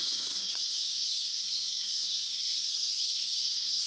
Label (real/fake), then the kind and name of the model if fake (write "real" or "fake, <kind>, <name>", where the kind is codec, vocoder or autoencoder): fake, codec, SNAC